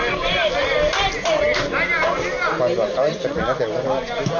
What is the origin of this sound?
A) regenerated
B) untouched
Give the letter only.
B